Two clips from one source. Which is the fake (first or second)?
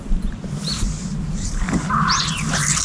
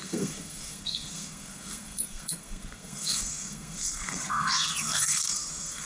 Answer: second